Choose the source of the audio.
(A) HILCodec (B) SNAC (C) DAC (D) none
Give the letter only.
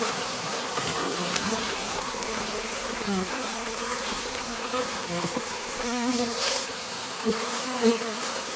B